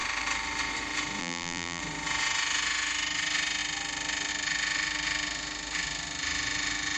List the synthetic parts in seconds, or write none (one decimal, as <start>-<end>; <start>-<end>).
1.2-1.8